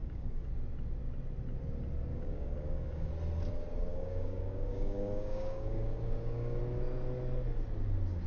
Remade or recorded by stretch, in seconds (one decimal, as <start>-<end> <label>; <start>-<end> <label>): 0.0-0.5 remade; 0.5-2.1 recorded; 2.1-3.1 remade; 3.1-3.9 recorded; 3.9-6.6 remade; 6.6-8.3 recorded